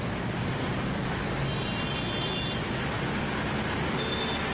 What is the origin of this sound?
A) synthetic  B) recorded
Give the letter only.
B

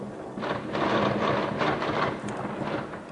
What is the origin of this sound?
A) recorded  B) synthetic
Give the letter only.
A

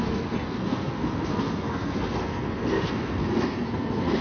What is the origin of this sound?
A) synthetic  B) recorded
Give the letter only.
A